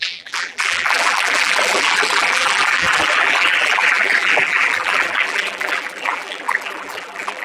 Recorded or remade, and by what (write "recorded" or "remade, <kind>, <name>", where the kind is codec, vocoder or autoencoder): remade, vocoder, BigVGAN v2